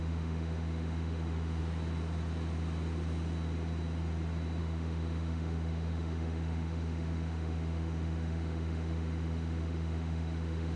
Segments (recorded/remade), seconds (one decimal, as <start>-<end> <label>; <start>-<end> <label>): 0.0-1.6 remade; 1.6-4.6 recorded; 4.6-10.8 remade